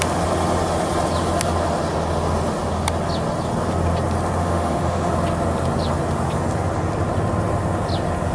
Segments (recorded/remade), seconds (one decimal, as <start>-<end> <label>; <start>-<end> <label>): 0.0-4.4 recorded; 4.4-5.1 remade; 5.1-8.3 recorded